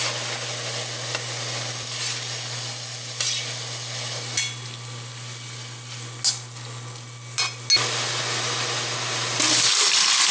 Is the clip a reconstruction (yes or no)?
no